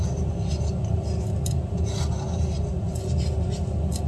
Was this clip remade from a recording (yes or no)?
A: no